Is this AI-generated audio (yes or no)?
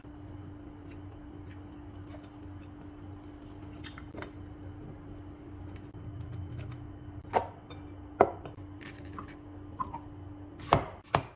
no